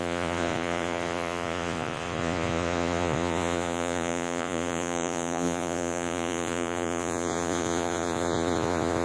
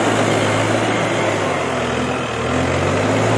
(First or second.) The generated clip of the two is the first